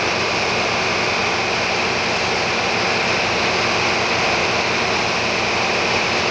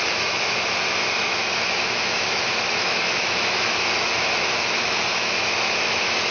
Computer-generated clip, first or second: second